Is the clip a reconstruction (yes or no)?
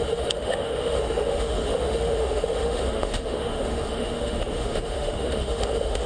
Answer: yes